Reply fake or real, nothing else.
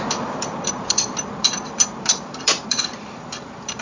fake